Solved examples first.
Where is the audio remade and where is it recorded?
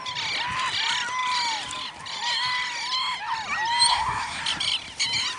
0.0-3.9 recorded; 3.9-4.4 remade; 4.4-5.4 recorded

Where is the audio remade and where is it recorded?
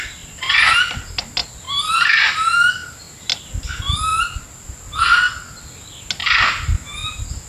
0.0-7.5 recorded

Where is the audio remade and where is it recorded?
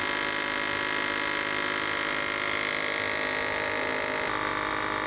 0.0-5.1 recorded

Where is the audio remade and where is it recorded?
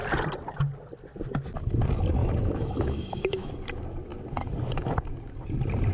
0.0-2.2 recorded; 2.2-3.5 remade; 3.5-5.9 recorded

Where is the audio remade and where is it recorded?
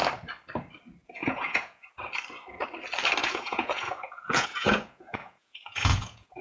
0.0-1.0 recorded; 1.0-1.9 remade; 1.9-3.2 recorded; 3.2-6.4 remade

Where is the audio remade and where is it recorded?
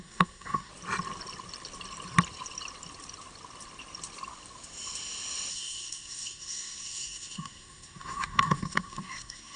0.0-0.7 remade; 0.7-5.5 recorded; 5.5-9.6 remade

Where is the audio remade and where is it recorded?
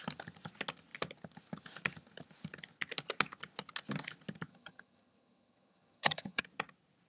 0.0-4.5 recorded; 4.5-6.4 remade; 6.4-7.1 recorded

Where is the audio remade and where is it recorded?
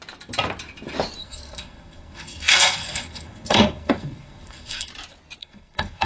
0.0-1.2 recorded; 1.2-4.9 remade; 4.9-5.4 recorded; 5.4-6.1 remade